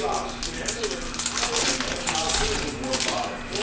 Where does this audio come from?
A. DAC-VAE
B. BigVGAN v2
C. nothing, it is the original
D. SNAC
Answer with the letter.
C